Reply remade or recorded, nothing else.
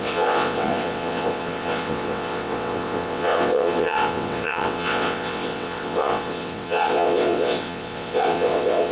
remade